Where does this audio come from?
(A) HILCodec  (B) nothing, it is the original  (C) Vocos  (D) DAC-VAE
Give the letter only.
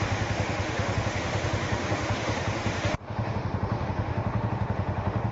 D